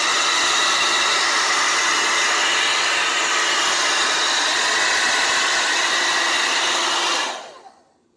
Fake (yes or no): no